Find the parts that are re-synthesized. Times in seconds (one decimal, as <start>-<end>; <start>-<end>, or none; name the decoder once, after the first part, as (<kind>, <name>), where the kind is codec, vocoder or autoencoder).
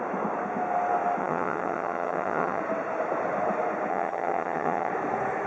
1.2-2.6 (vocoder, HiFi-GAN); 3.9-4.9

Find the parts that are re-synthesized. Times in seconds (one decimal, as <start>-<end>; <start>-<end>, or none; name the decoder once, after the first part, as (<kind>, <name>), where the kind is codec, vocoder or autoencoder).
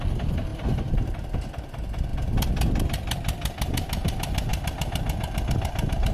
0.0-0.5 (vocoder, BigVGAN v2); 1.1-2.1; 2.8-6.1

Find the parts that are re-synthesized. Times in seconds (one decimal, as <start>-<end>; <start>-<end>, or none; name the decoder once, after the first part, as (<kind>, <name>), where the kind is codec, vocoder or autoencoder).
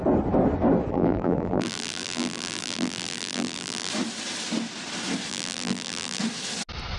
0.9-3.9 (vocoder, BigVGAN v2); 5.3-6.2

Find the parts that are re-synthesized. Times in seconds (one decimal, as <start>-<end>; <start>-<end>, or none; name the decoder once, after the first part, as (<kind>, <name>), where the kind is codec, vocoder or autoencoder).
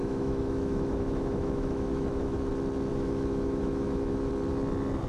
0.0-2.5 (autoencoder, DAC-VAE); 2.9-4.3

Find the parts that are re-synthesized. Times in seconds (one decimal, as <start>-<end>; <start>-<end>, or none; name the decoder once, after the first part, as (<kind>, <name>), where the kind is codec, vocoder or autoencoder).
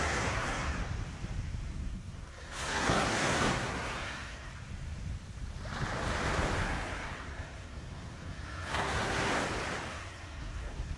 0.0-0.8 (codec, SNAC); 1.6-4.5; 6.6-9.3; 9.9-11.0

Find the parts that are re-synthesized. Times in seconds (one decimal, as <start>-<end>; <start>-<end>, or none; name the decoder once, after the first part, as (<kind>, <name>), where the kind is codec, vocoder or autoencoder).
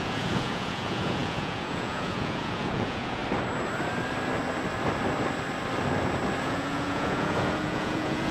0.0-3.2 (vocoder, Vocos); 6.4-8.3